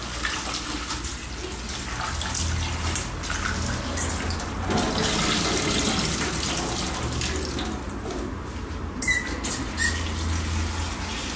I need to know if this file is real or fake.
real